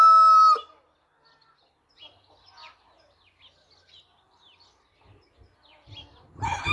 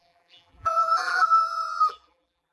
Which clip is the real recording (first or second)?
first